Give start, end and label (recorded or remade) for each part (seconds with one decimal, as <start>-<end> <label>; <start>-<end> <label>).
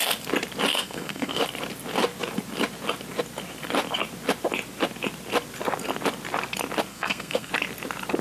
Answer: 0.0-0.7 recorded; 0.7-1.4 remade; 1.4-6.9 recorded; 6.9-7.5 remade; 7.5-8.2 recorded